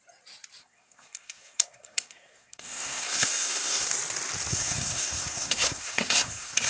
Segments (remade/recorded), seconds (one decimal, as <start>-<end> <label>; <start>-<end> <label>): 0.0-0.6 recorded; 0.6-3.9 remade; 3.9-4.5 recorded; 4.5-6.7 remade